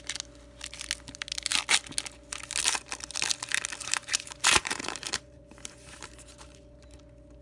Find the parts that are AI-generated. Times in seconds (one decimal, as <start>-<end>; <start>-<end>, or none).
3.8-7.0